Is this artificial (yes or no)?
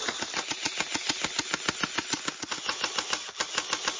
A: no